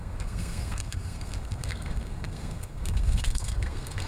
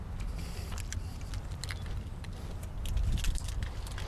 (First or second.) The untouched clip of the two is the second